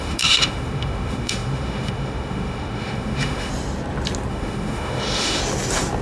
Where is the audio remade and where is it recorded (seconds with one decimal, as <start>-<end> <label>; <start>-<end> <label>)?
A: 0.0-3.5 remade; 3.5-4.3 recorded; 4.3-5.4 remade; 5.4-6.0 recorded